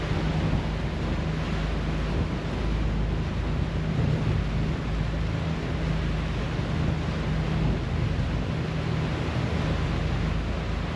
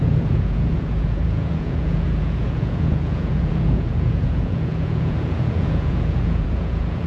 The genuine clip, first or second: first